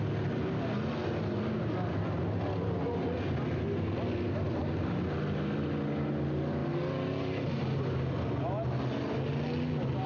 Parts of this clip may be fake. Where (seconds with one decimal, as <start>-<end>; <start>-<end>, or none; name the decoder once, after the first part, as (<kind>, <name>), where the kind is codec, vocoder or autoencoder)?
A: none